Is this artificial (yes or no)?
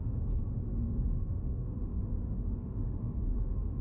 yes